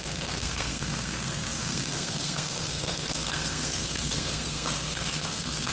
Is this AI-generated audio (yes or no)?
yes